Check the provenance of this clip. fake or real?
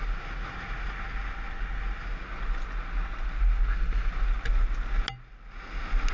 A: real